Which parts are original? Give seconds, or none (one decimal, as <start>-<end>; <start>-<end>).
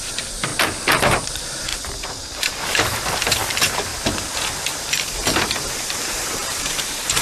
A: 0.5-1.0; 1.7-3.5; 3.9-5.7